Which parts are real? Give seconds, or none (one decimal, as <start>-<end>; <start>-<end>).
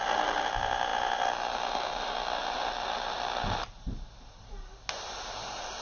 0.0-5.8